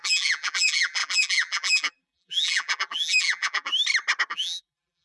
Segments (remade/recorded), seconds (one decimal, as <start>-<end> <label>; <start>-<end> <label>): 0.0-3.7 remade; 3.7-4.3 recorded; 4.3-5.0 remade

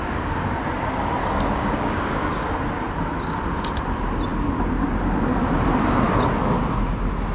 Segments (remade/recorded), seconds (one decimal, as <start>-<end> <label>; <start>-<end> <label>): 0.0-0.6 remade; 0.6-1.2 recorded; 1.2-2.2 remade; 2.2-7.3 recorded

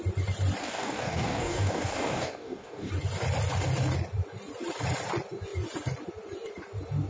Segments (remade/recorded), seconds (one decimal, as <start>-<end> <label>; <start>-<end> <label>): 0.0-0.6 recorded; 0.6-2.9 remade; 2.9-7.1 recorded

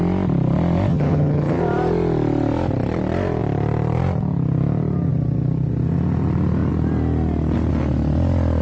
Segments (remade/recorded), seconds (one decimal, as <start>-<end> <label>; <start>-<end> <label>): 0.0-0.9 recorded; 0.9-1.6 remade; 1.6-8.6 recorded

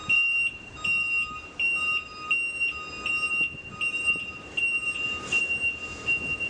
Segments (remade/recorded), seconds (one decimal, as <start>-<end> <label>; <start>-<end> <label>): 0.0-2.3 remade; 2.3-3.9 recorded; 3.9-5.4 remade; 5.4-6.5 recorded

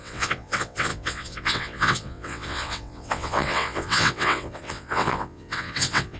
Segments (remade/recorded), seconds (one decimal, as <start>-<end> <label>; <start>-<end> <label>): 0.0-6.2 remade

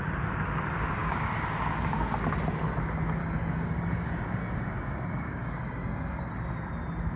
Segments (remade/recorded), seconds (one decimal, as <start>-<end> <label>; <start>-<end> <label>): 0.0-1.0 recorded; 1.0-2.1 remade; 2.1-3.2 recorded; 3.2-6.2 remade; 6.2-7.2 recorded

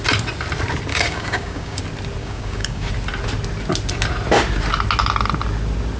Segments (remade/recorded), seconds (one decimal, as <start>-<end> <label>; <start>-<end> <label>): 0.0-0.9 recorded; 0.9-1.8 remade; 1.8-2.2 recorded; 2.2-2.9 remade; 2.9-6.0 recorded